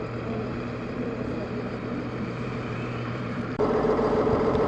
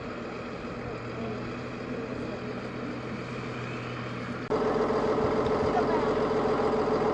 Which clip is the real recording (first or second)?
second